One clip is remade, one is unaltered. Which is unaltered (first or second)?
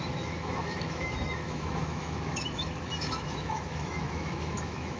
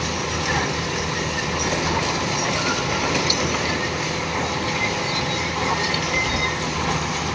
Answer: second